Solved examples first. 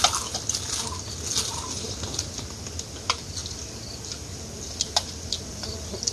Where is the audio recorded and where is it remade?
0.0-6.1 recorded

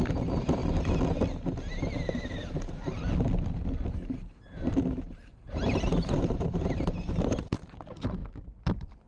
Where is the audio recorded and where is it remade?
0.0-0.6 remade; 0.6-2.1 recorded; 2.1-3.1 remade; 3.1-3.9 recorded; 3.9-8.2 remade; 8.2-9.1 recorded